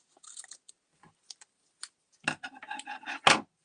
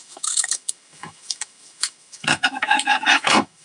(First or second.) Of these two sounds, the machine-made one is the second